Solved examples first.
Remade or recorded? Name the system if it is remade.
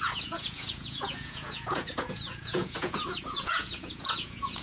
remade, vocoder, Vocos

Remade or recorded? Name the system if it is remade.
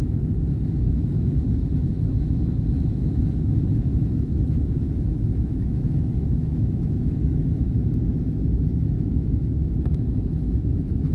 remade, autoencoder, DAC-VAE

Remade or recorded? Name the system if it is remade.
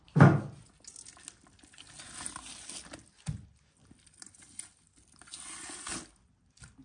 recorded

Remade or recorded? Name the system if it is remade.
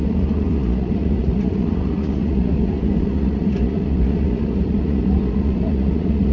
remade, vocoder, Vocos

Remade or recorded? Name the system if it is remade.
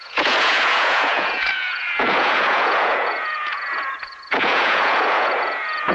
remade, vocoder, Vocos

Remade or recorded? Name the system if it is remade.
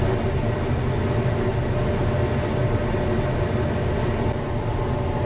recorded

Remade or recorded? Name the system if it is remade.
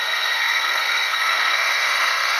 remade, codec, SNAC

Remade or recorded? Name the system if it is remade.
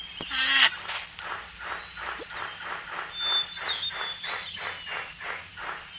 recorded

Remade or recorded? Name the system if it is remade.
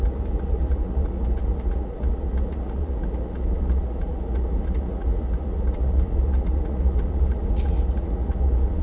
remade, vocoder, Vocos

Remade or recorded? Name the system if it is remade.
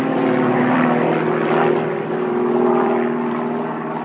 remade, vocoder, BigVGAN v2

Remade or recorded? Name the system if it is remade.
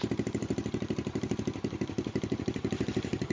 remade, vocoder, BigVGAN v2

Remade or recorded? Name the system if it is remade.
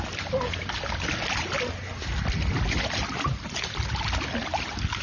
recorded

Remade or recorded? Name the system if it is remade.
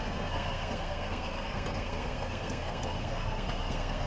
remade, codec, SNAC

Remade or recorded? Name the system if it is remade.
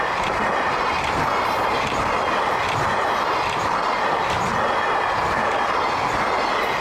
recorded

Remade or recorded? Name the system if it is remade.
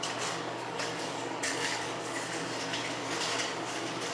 remade, codec, DAC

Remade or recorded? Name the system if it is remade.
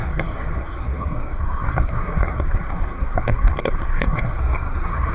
remade, codec, SNAC